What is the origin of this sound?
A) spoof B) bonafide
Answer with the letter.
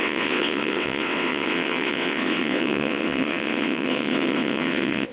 A